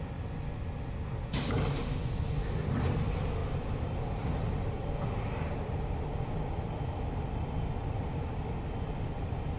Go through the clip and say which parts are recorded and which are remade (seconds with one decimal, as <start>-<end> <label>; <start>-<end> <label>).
0.0-9.6 recorded

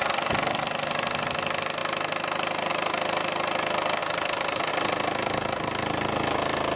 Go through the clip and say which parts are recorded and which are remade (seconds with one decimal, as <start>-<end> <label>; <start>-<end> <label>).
0.0-4.0 recorded; 4.0-4.7 remade; 4.7-6.8 recorded

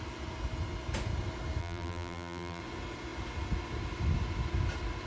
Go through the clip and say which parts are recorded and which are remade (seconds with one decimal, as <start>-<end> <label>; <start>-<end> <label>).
0.0-1.6 recorded; 1.6-2.6 remade; 2.6-5.1 recorded

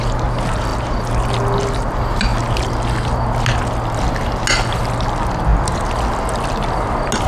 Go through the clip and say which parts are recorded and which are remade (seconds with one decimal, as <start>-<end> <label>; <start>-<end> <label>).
0.0-7.3 recorded

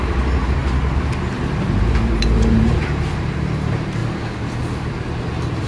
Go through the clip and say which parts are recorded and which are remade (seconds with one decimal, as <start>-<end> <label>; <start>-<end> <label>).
0.0-0.6 remade; 0.6-1.6 recorded; 1.6-4.0 remade; 4.0-4.6 recorded; 4.6-5.7 remade

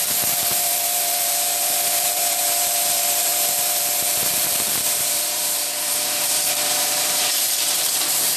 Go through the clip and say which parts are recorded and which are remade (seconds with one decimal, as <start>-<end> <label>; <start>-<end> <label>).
0.0-8.4 remade

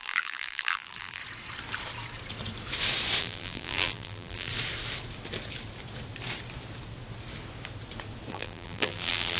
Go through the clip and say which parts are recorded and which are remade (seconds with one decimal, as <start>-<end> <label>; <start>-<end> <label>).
0.0-1.2 remade; 1.2-3.2 recorded; 3.2-4.5 remade; 4.5-8.3 recorded; 8.3-9.4 remade